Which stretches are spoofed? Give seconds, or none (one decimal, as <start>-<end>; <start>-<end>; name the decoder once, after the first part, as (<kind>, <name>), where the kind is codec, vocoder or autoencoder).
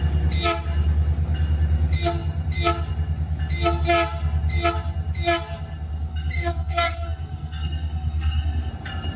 6.1-8.7 (codec, SNAC)